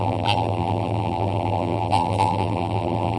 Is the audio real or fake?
fake